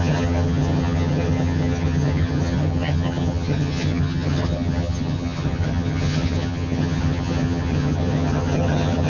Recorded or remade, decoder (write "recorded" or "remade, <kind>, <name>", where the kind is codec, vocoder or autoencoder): remade, vocoder, HiFi-GAN